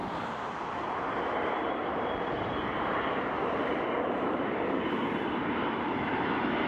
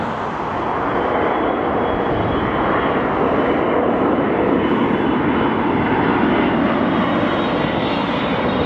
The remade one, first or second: first